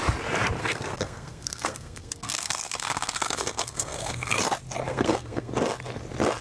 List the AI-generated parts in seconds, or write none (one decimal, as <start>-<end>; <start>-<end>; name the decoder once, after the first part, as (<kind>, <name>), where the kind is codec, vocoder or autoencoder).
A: 0.6-4.4 (codec, SNAC); 4.9-5.5